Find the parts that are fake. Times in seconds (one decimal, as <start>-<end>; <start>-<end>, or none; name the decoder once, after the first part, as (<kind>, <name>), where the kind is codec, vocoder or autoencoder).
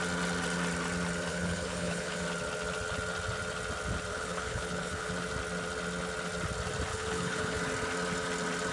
1.3-2.2 (codec, HILCodec); 4.1-5.1; 6.9-7.6